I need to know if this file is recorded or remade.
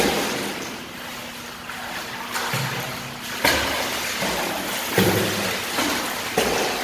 recorded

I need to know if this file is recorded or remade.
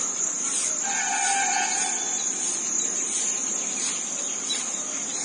recorded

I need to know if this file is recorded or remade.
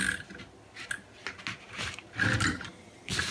recorded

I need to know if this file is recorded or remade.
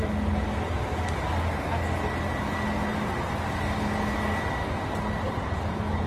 recorded